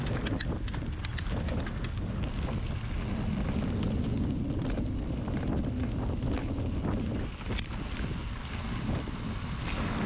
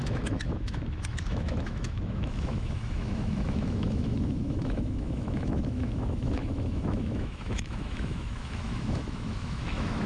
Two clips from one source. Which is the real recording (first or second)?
first